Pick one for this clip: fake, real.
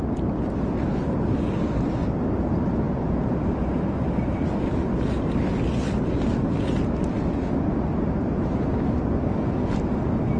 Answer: real